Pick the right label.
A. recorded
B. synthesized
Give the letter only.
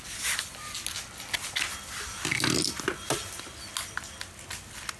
A